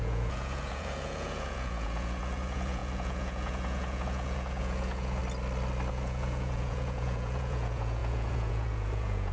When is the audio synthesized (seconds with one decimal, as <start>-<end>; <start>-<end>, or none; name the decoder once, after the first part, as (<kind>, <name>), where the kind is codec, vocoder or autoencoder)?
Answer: 0.0-5.2 (vocoder, Vocos); 5.9-9.3